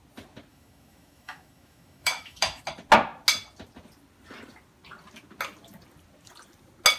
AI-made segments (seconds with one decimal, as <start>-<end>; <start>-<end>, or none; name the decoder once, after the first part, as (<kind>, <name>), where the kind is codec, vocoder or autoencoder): 0.5-2.6 (autoencoder, DAC-VAE)